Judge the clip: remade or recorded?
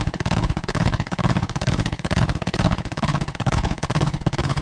remade